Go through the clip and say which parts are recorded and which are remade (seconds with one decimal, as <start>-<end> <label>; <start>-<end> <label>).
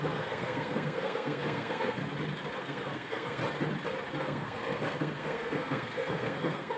0.0-2.0 remade; 2.0-2.6 recorded; 2.6-3.4 remade; 3.4-4.2 recorded; 4.2-6.8 remade